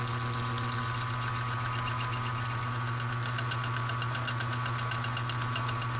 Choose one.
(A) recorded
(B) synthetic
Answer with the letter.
A